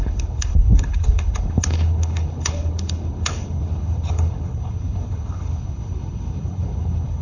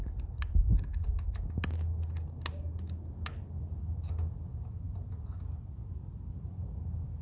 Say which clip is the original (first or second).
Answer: second